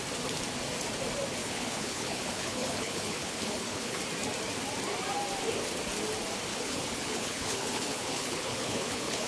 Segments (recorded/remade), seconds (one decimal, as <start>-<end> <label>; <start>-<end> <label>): 0.0-1.4 recorded; 1.4-4.0 remade; 4.0-6.5 recorded; 6.5-9.3 remade